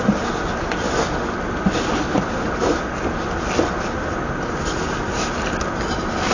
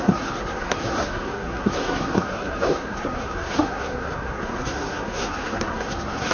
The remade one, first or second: second